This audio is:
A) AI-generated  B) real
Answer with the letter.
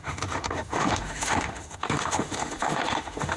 A